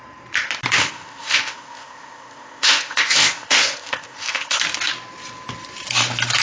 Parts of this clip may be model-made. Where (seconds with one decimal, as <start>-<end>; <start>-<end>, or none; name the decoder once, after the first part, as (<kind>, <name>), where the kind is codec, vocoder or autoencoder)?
0.8-4.6 (codec, ZipCodec)